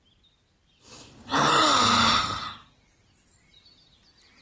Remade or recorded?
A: recorded